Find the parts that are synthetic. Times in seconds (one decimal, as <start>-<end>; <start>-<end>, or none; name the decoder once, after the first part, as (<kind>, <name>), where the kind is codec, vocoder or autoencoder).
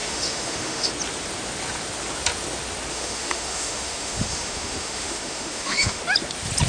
0.0-0.9 (autoencoder, DAC-VAE); 2.9-6.0